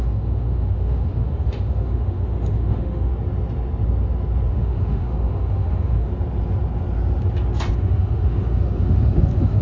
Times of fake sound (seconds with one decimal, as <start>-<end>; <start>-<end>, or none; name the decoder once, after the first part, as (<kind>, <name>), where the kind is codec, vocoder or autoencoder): 0.0-3.1 (autoencoder, DAC-VAE); 4.5-6.1; 7.7-9.6